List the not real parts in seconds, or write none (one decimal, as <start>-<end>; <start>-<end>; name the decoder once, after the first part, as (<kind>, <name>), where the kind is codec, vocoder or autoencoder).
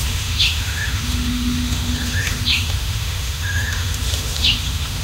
0.0-5.0 (autoencoder, DAC-VAE)